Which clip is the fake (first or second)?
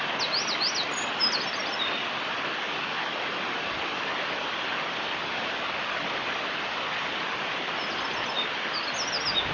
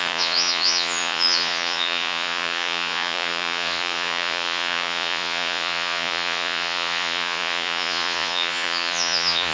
second